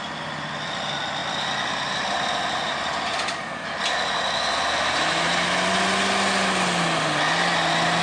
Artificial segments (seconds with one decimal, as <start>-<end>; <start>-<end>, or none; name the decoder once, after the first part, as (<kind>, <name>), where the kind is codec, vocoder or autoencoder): none